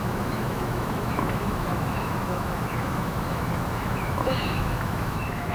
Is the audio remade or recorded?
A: remade